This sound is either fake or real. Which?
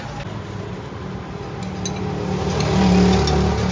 real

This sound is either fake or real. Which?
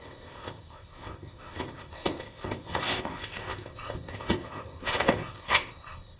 fake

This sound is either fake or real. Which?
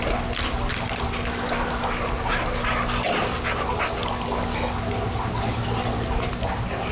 real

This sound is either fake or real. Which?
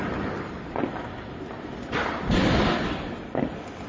real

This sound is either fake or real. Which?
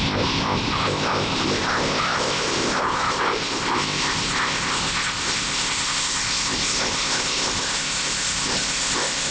fake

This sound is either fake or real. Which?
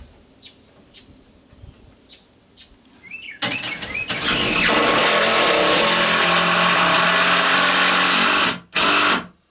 real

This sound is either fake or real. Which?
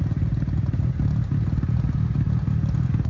real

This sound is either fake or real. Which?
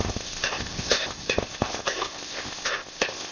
fake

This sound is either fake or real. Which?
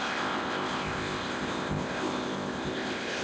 fake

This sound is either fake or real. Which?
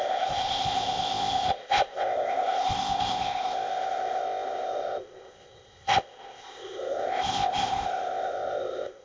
fake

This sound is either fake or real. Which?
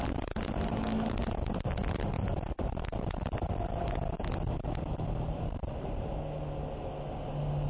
real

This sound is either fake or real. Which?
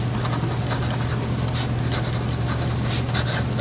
real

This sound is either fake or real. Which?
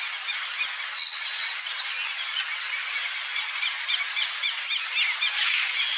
real